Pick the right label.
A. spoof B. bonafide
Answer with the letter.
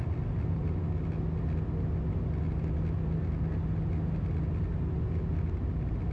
B